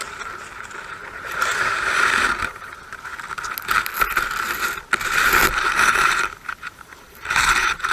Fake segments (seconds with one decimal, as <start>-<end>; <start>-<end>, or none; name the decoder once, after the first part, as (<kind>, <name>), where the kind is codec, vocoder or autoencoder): 0.0-3.1 (vocoder, BigVGAN v2); 5.9-7.9